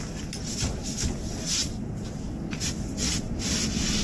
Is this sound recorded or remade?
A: recorded